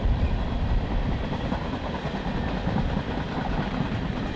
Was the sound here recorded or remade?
remade